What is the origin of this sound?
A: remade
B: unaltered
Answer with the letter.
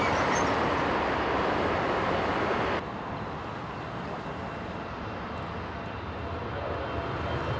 B